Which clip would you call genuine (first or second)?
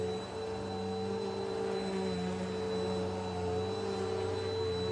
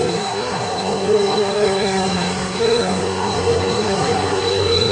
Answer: first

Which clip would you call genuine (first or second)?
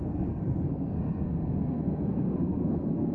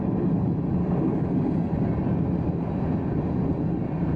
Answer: second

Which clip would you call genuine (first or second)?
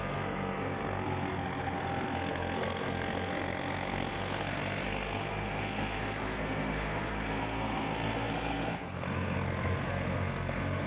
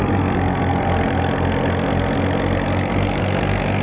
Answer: second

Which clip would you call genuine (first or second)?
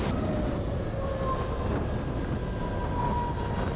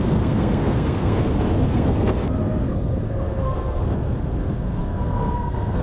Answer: first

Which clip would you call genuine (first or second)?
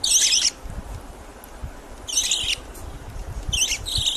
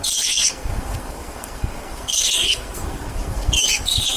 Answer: first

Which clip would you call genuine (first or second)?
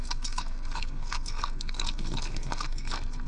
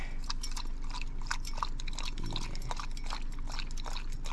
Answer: second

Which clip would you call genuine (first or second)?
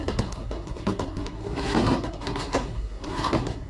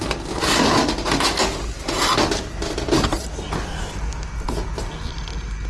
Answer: second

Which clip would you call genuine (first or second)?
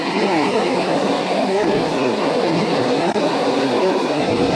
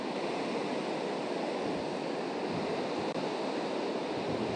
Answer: second